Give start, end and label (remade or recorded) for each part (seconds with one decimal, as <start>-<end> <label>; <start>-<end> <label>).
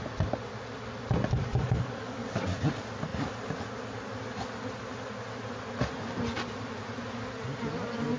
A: 0.0-1.4 recorded; 1.4-2.4 remade; 2.4-8.2 recorded